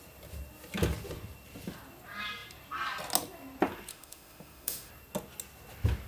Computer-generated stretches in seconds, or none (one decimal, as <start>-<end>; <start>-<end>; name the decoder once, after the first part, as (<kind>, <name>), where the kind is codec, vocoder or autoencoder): 3.9-4.9 (autoencoder, DAC-VAE)